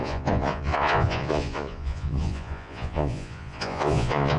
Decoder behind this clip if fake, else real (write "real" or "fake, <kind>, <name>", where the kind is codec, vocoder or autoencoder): fake, vocoder, Vocos